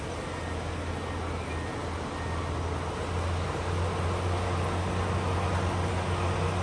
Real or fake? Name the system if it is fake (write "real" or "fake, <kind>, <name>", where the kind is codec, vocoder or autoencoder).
real